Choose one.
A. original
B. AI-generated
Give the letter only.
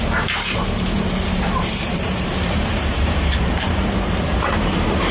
B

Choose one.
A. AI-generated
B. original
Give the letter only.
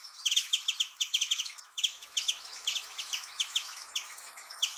A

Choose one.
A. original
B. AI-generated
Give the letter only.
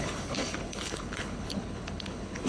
B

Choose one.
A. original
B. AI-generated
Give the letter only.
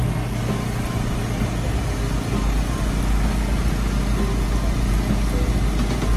A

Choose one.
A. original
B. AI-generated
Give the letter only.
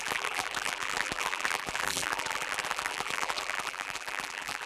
B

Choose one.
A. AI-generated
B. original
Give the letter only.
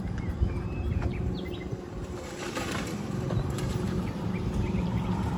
A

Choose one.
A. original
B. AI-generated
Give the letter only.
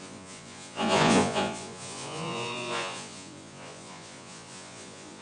B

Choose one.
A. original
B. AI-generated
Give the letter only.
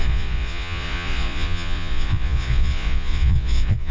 B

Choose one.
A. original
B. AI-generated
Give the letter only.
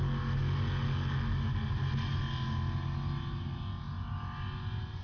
A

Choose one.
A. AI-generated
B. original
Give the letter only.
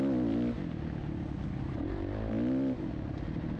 B